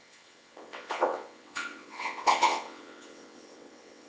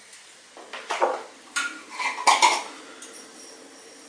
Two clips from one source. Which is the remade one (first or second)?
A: first